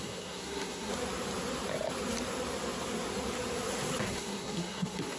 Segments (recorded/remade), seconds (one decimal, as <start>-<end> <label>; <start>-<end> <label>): 0.0-0.9 remade; 0.9-4.0 recorded; 4.0-5.2 remade